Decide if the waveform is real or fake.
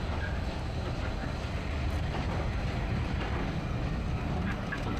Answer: real